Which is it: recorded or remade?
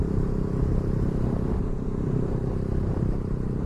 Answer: remade